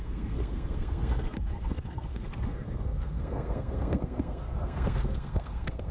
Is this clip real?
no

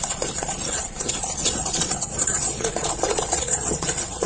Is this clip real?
no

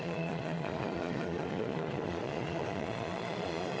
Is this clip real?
no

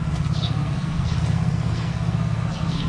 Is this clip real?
no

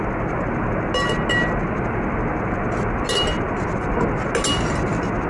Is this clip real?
yes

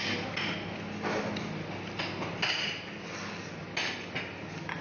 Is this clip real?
yes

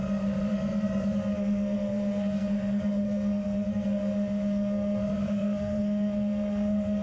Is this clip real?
no